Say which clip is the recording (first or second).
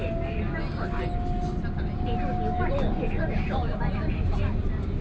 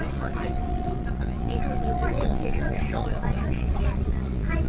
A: first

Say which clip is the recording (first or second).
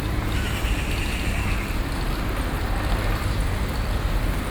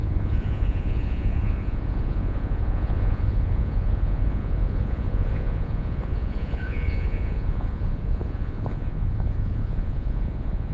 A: first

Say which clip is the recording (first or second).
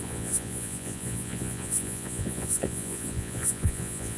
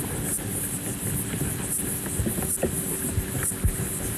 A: second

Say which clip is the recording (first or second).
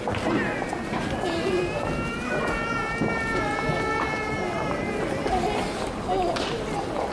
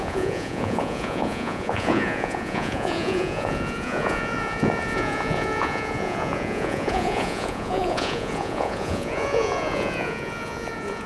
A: first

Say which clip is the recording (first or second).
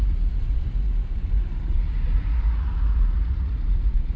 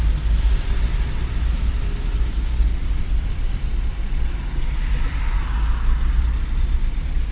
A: second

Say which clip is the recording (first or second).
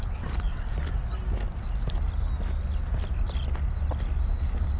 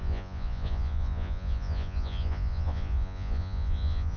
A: first